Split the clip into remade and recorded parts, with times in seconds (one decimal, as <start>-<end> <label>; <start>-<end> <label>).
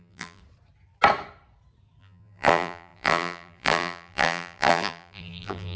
0.0-0.4 remade; 0.4-2.0 recorded; 2.0-5.8 remade